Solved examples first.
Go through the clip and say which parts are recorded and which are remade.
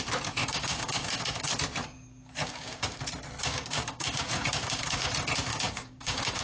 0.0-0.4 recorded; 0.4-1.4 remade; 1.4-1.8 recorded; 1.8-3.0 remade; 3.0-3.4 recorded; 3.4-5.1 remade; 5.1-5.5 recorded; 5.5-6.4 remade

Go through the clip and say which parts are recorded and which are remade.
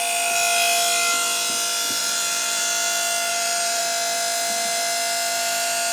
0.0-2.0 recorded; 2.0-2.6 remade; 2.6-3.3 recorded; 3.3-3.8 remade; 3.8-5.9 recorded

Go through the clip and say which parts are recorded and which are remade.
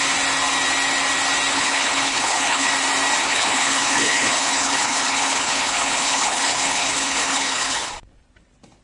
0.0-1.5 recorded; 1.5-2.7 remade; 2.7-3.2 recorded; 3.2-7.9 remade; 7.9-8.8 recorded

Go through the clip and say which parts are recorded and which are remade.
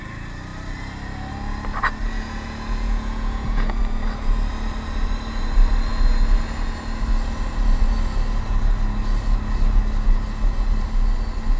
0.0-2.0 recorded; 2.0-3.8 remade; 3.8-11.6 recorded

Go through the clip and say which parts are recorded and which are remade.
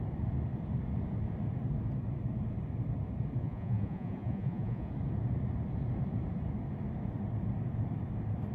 0.0-3.4 recorded; 3.4-4.9 remade; 4.9-8.5 recorded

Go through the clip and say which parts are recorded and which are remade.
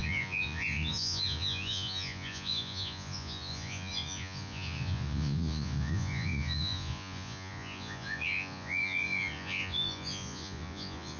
0.0-11.2 remade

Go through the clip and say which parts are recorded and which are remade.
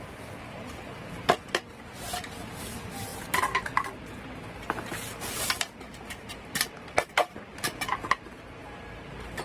0.0-3.1 remade; 3.1-6.0 recorded; 6.0-9.4 remade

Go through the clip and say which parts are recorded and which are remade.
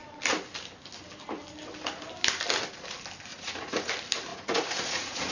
0.0-3.3 recorded; 3.3-3.9 remade; 3.9-4.3 recorded; 4.3-5.3 remade